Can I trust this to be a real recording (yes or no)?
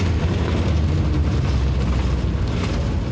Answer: yes